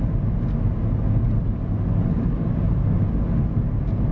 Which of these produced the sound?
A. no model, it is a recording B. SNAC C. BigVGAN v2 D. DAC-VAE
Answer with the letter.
A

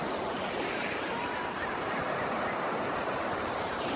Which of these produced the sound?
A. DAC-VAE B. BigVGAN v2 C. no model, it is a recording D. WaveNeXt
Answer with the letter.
C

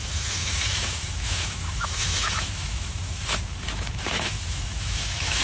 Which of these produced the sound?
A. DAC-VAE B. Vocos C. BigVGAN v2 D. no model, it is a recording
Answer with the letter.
A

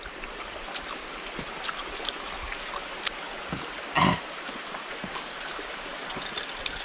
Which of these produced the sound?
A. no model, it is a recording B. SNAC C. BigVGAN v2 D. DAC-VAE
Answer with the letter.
A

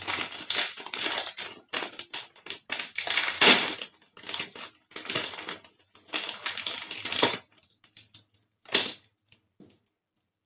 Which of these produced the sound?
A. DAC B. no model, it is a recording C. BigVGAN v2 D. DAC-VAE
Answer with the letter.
B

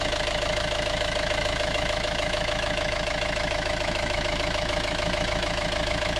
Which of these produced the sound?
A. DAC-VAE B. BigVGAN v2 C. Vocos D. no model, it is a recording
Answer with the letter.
A